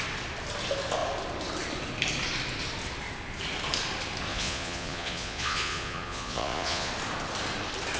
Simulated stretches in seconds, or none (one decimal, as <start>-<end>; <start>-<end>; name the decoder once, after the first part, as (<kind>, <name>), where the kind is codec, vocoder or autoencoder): 4.3-6.9 (vocoder, Vocos)